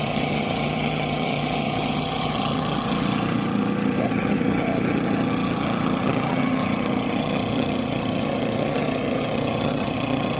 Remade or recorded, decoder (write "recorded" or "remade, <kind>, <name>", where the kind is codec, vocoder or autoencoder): remade, vocoder, HiFi-GAN